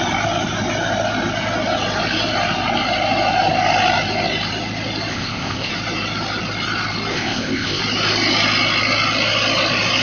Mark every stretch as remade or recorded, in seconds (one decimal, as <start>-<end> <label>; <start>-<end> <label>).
0.0-5.1 recorded; 5.1-5.7 remade; 5.7-7.1 recorded; 7.1-7.8 remade; 7.8-10.0 recorded